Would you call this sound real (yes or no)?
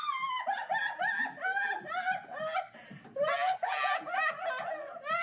yes